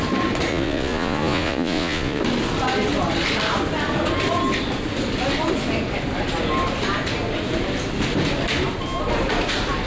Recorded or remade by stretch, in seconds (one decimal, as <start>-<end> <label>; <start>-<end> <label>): 0.0-0.5 recorded; 0.5-2.2 remade; 2.2-9.9 recorded